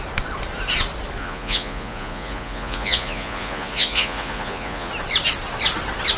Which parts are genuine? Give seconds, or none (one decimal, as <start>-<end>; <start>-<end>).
0.0-1.2; 4.9-6.2